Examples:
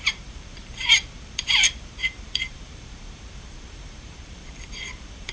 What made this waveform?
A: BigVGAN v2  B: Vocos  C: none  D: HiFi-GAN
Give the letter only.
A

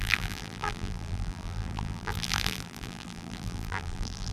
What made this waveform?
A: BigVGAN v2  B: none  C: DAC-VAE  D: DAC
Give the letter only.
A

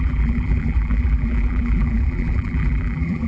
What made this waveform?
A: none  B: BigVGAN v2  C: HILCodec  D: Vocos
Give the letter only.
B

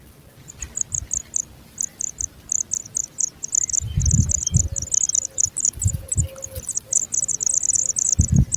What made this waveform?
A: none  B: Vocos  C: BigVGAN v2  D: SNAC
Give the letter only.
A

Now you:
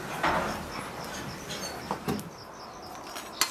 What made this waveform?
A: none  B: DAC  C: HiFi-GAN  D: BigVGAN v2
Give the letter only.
A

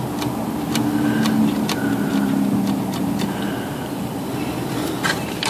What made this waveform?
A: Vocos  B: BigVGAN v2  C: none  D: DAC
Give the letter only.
B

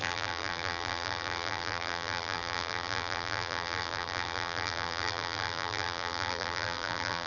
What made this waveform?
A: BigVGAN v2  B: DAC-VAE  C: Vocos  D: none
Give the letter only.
A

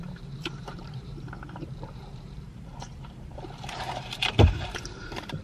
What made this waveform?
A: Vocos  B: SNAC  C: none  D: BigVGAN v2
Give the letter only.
D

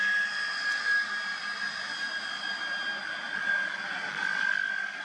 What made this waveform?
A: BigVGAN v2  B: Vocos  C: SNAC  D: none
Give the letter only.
D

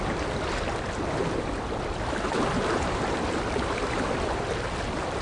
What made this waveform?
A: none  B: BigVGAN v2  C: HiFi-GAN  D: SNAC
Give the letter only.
A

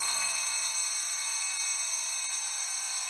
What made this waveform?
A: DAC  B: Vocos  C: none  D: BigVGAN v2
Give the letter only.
D